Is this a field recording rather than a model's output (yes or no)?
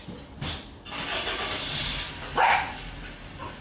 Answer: yes